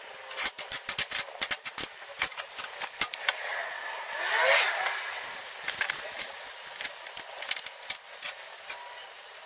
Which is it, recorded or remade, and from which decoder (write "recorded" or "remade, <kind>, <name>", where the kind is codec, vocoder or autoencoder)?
recorded